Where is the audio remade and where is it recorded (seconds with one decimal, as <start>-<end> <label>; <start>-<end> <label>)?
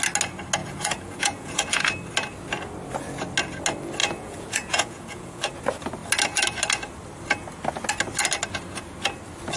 0.0-0.6 recorded; 0.6-1.8 remade; 1.8-4.0 recorded; 4.0-5.5 remade; 5.5-9.6 recorded